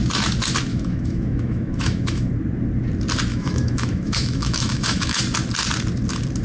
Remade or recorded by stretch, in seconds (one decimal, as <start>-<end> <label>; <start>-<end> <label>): 0.0-0.7 recorded; 0.7-2.3 remade; 2.3-3.3 recorded; 3.3-5.2 remade; 5.2-6.4 recorded